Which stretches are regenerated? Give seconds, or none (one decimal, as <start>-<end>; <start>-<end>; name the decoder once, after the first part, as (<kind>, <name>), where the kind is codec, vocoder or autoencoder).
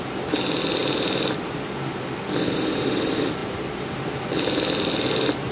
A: none